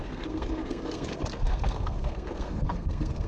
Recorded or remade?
remade